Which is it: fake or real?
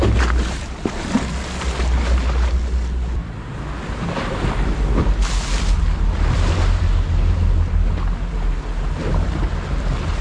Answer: real